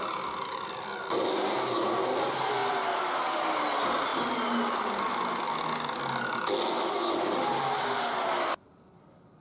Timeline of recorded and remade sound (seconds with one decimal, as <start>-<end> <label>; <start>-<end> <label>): 0.0-9.4 recorded

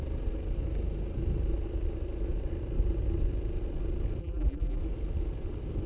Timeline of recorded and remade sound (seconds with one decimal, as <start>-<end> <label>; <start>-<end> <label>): 0.0-4.2 recorded; 4.2-4.8 remade; 4.8-5.9 recorded

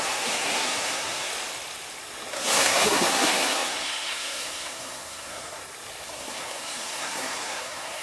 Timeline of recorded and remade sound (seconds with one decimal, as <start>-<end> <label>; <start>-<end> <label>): 0.0-1.3 remade; 1.3-2.3 recorded; 2.3-5.6 remade; 5.6-6.1 recorded; 6.1-8.0 remade

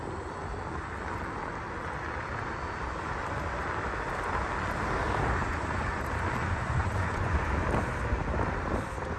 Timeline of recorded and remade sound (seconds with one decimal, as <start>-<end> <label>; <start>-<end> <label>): 0.0-5.4 recorded; 5.4-6.0 remade; 6.0-6.4 recorded; 6.4-7.5 remade; 7.5-9.2 recorded

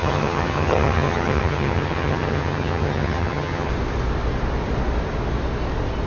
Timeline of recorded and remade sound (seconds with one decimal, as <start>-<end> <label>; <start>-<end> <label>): 0.0-3.7 remade; 3.7-6.1 recorded